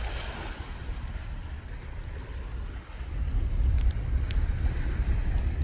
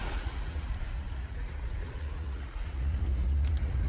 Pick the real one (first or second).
first